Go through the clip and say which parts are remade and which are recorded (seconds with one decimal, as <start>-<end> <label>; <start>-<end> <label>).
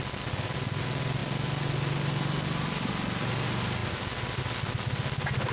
0.0-3.8 recorded; 3.8-4.4 remade; 4.4-5.5 recorded